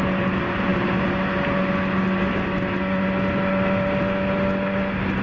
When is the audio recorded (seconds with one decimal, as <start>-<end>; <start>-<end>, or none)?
0.0-5.2